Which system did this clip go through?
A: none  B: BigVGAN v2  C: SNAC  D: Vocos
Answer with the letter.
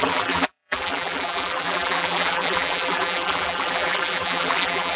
B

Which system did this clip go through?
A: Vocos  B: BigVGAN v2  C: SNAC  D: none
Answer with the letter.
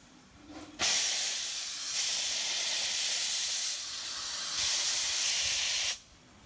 B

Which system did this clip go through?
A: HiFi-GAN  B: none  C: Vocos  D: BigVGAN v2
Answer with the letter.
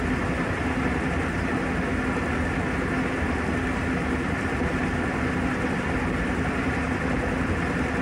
B